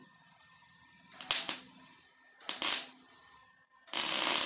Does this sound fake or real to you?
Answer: real